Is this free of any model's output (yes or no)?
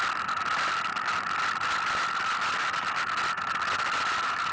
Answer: yes